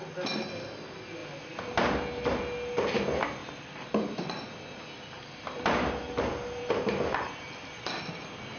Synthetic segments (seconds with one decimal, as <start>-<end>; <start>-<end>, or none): 1.2-1.9; 3.4-8.6